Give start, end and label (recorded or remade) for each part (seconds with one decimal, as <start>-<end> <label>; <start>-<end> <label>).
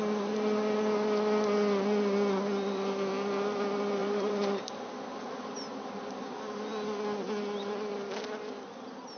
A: 0.0-4.0 recorded; 4.0-4.6 remade; 4.6-9.2 recorded